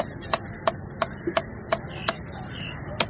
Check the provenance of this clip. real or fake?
real